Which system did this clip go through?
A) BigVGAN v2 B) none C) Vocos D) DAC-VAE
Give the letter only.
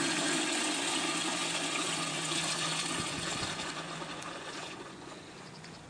C